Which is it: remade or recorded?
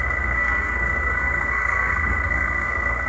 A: remade